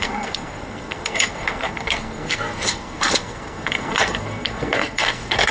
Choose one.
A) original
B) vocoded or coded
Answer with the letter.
B